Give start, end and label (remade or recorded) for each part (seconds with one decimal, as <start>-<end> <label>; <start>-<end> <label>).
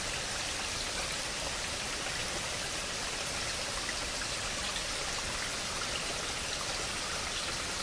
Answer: 0.0-7.8 recorded